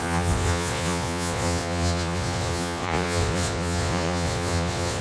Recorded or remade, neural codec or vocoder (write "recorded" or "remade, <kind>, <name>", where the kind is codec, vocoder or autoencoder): remade, vocoder, Vocos